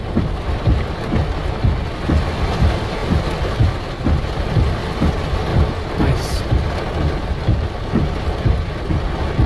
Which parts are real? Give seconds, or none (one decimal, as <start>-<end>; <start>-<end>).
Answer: 0.0-3.0; 5.1-5.5; 8.9-9.5